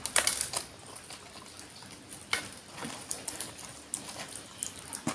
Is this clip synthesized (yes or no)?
no